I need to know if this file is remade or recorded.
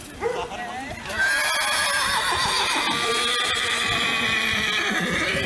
recorded